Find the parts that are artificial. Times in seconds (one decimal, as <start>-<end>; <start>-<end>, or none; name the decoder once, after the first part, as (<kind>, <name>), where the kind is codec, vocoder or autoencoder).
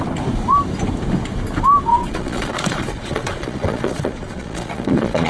1.9-5.3 (vocoder, Vocos)